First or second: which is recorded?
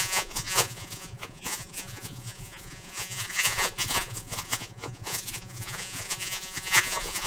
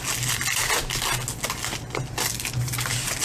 second